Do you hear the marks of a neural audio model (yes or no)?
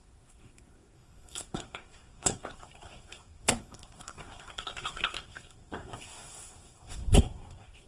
yes